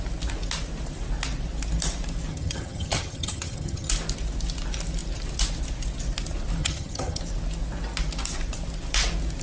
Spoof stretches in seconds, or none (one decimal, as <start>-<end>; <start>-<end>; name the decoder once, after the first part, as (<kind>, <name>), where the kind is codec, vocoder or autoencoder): 2.3-3.9 (vocoder, HiFi-GAN); 6.6-7.2

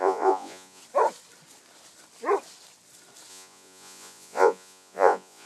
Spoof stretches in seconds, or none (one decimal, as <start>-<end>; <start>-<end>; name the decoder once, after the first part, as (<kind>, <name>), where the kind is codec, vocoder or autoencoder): 0.0-0.8 (vocoder, Vocos); 3.3-5.5

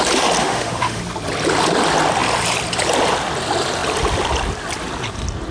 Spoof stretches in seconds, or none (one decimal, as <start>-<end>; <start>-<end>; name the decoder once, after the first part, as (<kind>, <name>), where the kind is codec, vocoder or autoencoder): 0.4-1.0 (autoencoder, DAC-VAE)

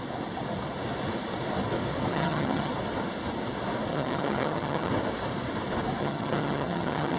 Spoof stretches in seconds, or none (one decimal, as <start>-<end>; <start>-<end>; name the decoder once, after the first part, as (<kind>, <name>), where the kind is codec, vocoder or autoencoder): 2.1-2.7 (vocoder, HiFi-GAN); 3.9-4.9; 6.0-7.2

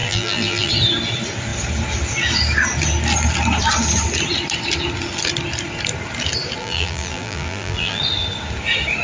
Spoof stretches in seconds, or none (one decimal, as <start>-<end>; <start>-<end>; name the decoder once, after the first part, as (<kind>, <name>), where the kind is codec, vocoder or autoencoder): 0.0-0.7 (vocoder, BigVGAN v2); 6.6-8.0

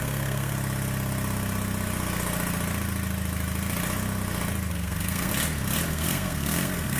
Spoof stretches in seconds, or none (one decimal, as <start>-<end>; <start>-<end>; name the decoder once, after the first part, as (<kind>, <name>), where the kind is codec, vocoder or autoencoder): 0.0-0.5 (codec, SNAC); 4.7-5.3; 5.9-7.0

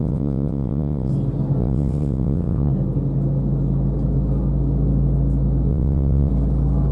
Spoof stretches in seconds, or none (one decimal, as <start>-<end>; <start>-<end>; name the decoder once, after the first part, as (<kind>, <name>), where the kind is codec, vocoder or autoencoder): 0.0-1.1 (vocoder, WaveNeXt); 1.6-2.7; 5.7-6.3